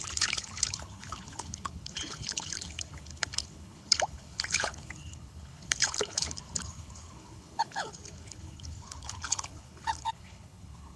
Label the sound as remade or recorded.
remade